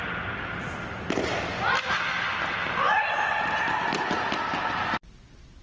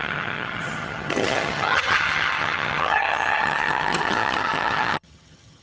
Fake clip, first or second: second